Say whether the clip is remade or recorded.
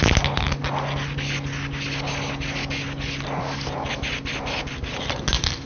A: recorded